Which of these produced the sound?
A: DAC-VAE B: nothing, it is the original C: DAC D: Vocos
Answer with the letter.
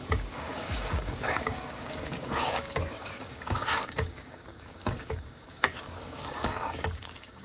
C